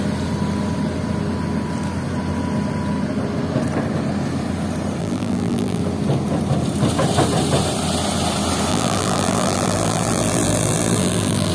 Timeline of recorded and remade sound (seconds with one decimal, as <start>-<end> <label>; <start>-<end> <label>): 0.0-5.0 recorded; 5.0-5.8 remade; 5.8-8.7 recorded; 8.7-11.5 remade